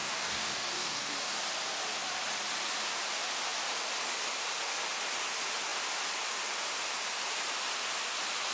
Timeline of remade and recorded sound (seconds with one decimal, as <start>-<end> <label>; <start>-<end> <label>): 0.0-1.4 remade; 1.4-8.5 recorded